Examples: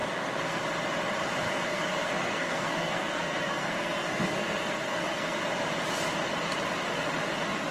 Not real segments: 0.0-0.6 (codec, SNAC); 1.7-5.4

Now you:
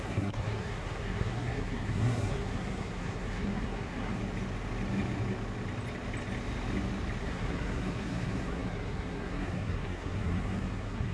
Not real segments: 0.0-4.2 (codec, SNAC); 7.2-11.1

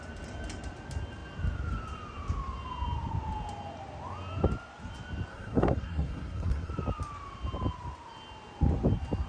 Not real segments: 5.3-6.7 (codec, SNAC)

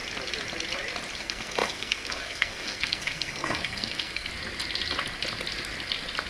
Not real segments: 1.2-4.3 (codec, SNAC)

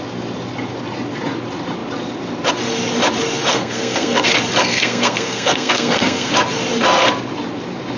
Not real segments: 3.5-4.3 (codec, SNAC); 4.7-6.3

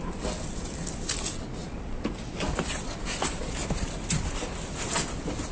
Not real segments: none